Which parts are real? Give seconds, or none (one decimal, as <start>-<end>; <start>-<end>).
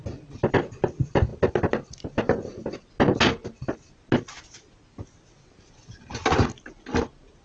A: 0.0-7.4